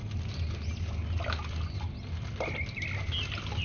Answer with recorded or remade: recorded